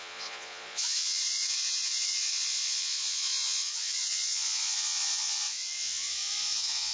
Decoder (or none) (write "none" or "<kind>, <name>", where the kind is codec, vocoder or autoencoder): vocoder, Vocos